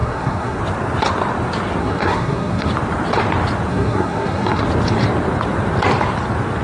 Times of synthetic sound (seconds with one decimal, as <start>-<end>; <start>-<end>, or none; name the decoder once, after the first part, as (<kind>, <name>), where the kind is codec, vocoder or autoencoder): 0.0-0.6 (codec, SNAC); 1.8-2.7; 3.7-4.6

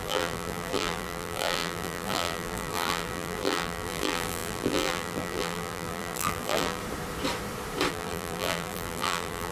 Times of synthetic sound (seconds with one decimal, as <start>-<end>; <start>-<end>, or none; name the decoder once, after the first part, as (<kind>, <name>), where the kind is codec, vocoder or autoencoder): 0.0-6.8 (vocoder, BigVGAN v2); 7.9-9.5

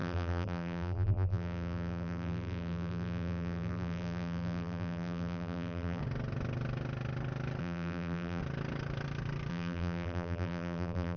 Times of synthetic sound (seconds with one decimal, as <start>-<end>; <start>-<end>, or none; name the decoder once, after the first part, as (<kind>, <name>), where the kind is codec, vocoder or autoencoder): 0.0-6.0 (vocoder, BigVGAN v2); 7.6-8.4; 9.5-11.2

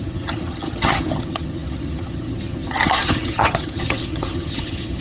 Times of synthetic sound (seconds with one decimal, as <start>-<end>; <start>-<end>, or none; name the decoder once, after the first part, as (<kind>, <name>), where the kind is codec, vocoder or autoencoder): 0.0-5.0 (vocoder, HiFi-GAN)

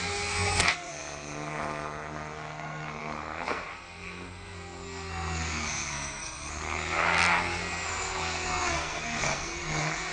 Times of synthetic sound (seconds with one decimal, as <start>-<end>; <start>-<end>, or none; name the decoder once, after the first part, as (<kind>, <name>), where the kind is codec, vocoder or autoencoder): 0.0-10.1 (codec, SNAC)

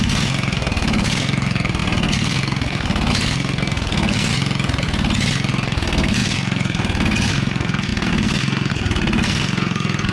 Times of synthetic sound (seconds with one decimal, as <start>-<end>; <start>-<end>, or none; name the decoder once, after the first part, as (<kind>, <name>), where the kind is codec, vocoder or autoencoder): 0.0-4.3 (codec, SNAC); 5.5-10.1

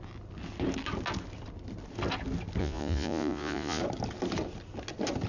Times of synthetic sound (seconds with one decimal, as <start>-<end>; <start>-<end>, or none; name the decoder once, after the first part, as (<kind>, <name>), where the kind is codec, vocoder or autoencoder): 2.6-3.8 (vocoder, Vocos)

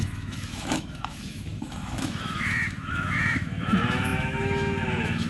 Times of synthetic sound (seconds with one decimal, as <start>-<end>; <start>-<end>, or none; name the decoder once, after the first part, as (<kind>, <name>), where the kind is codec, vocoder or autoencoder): 0.0-5.3 (autoencoder, DAC-VAE)